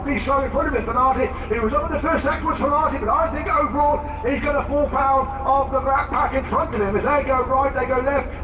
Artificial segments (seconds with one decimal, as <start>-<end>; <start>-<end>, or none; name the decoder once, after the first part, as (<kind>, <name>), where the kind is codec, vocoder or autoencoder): none